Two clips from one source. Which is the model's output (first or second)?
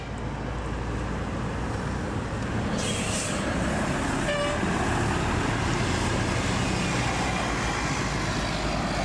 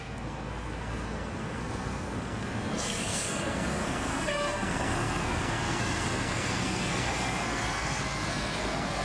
second